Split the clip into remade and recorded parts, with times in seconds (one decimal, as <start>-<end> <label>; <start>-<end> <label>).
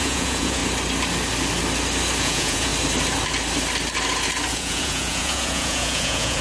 0.0-0.6 remade; 0.6-2.2 recorded; 2.2-2.7 remade; 2.7-4.5 recorded; 4.5-6.4 remade